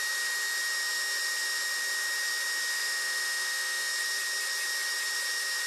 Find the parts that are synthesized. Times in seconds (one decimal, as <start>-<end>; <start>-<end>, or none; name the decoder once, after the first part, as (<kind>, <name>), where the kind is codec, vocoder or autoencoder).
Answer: 2.7-3.9 (autoencoder, DAC-VAE)